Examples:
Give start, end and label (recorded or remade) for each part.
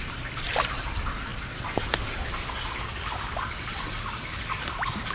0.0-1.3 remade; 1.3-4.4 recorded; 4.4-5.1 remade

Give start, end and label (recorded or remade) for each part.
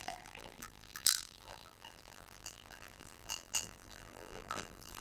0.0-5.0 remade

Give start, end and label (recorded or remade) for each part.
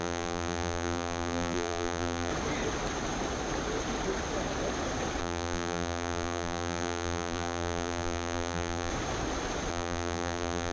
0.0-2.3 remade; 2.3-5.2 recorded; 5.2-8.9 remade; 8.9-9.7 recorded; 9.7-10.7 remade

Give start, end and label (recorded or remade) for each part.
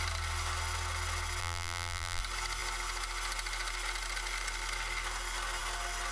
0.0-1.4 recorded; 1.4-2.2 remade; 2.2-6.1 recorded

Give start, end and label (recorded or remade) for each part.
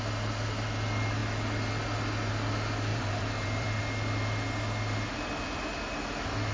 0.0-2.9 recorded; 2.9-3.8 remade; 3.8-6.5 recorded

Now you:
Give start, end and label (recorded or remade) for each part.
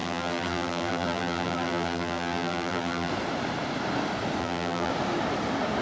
0.0-3.1 remade; 3.1-4.4 recorded; 4.4-4.9 remade; 4.9-5.8 recorded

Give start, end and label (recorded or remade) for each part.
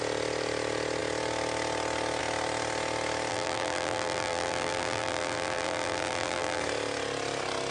0.0-3.3 recorded; 3.3-6.6 remade; 6.6-7.7 recorded